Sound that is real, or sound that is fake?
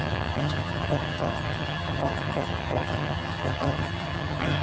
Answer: fake